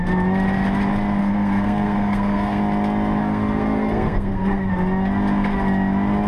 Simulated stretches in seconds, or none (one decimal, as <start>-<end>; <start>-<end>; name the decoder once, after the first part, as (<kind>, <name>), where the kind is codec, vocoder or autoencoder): 1.2-2.6 (codec, SNAC); 3.2-4.7